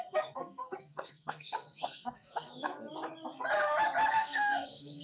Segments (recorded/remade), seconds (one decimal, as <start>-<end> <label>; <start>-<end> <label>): 0.0-2.7 remade; 2.7-4.1 recorded; 4.1-5.0 remade